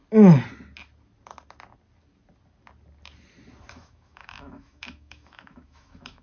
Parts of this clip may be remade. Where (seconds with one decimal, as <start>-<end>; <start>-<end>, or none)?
3.7-6.2